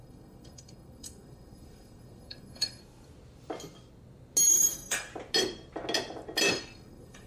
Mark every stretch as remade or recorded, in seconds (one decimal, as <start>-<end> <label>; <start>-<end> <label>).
0.0-2.8 remade; 2.8-4.5 recorded; 4.5-5.1 remade; 5.1-6.5 recorded; 6.5-7.3 remade